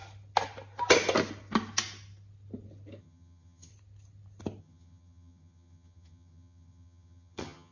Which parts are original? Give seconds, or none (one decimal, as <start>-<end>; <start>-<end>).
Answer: 0.0-3.0; 3.7-4.6